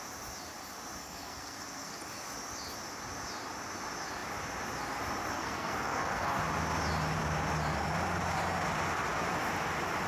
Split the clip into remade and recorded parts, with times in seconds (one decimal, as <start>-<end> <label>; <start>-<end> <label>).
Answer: 0.0-1.0 recorded; 1.0-2.0 remade; 2.0-5.3 recorded; 5.3-6.4 remade; 6.4-10.1 recorded